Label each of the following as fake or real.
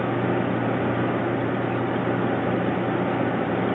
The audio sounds real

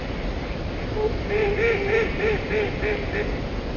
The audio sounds real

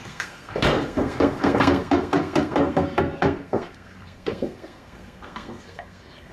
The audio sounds fake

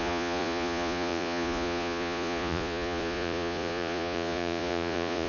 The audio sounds fake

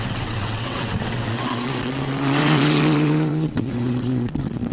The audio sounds fake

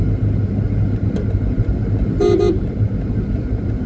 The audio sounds real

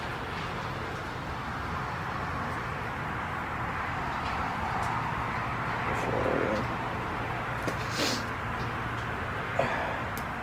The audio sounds real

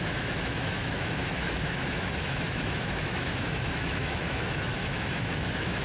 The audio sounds fake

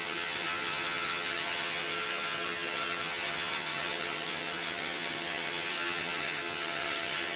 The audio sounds fake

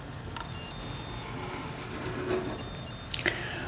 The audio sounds real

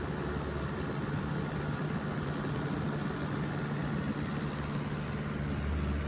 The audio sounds real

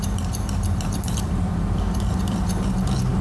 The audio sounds fake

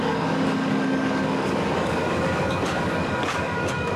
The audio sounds fake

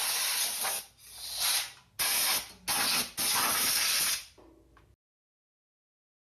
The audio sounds real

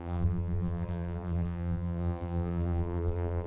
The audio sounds fake